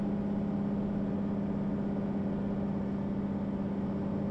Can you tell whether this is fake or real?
real